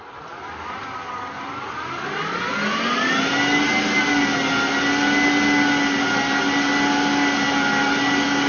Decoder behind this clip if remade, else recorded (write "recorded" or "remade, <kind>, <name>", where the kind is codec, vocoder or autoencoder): recorded